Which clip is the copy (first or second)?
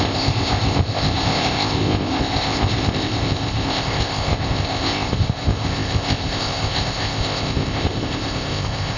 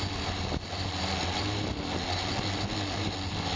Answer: first